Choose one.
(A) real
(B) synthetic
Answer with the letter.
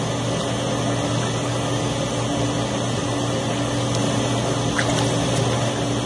A